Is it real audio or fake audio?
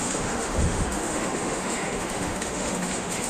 fake